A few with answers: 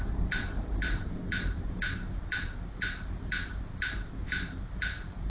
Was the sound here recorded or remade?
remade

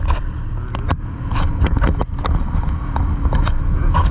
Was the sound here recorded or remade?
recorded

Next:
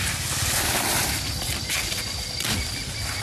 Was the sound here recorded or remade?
recorded